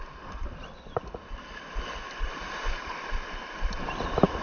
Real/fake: real